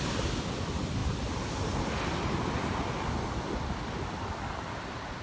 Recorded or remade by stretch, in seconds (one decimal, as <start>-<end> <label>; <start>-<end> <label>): 0.0-5.2 recorded